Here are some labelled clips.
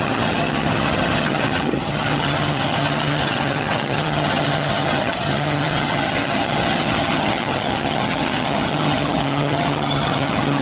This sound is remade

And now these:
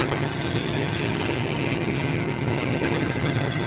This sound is remade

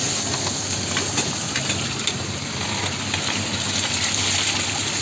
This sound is recorded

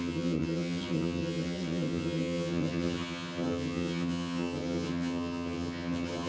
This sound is remade